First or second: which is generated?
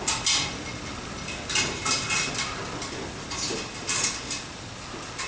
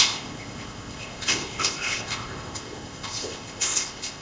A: second